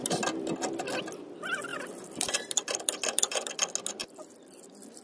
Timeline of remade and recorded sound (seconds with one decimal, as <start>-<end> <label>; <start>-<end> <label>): 0.0-1.7 recorded; 1.7-3.5 remade; 3.5-5.0 recorded